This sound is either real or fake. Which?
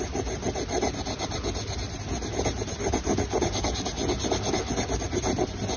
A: real